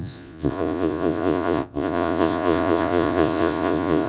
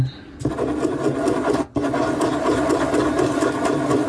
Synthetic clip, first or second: first